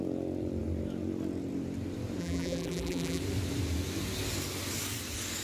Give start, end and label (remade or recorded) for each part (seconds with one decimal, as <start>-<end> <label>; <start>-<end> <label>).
0.0-2.2 recorded; 2.2-3.2 remade; 3.2-5.4 recorded